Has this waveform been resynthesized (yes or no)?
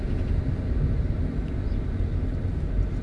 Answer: no